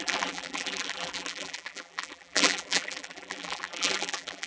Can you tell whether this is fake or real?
fake